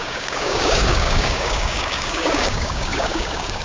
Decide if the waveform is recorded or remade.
remade